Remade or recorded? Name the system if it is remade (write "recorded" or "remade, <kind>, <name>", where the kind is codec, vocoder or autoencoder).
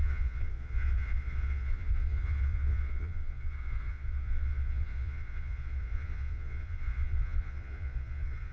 remade, vocoder, Vocos